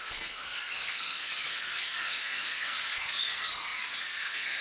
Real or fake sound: fake